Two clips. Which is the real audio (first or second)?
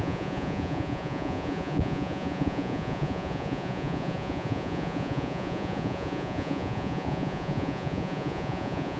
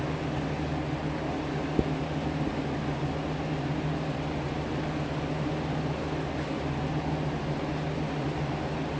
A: second